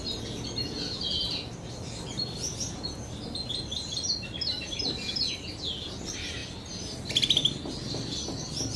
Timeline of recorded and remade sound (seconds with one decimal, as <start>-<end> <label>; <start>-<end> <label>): 0.0-8.8 recorded